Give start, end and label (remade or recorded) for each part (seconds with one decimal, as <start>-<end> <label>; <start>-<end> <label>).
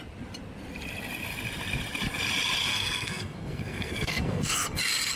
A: 0.0-2.7 recorded; 2.7-4.8 remade; 4.8-5.2 recorded